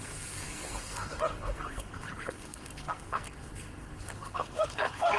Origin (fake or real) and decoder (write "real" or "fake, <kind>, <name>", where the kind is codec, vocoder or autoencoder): fake, codec, SNAC